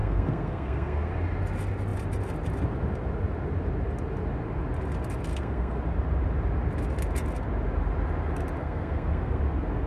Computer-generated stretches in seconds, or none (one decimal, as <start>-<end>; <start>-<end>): 0.0-1.1; 5.3-5.8; 8.6-9.4